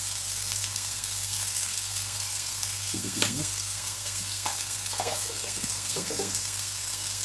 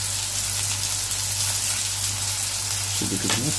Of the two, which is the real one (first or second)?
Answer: second